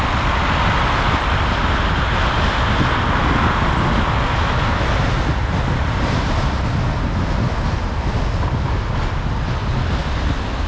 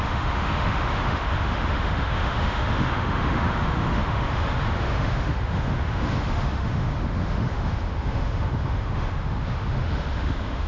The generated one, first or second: second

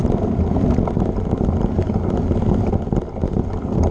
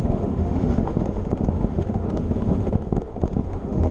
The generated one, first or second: second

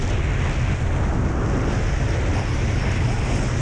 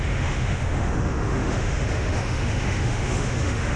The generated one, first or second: second